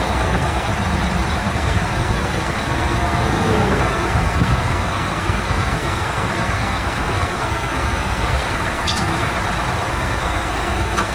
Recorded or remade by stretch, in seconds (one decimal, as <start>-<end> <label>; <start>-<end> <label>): 0.0-0.7 remade; 0.7-1.4 recorded; 1.4-9.3 remade; 9.3-9.9 recorded; 9.9-11.1 remade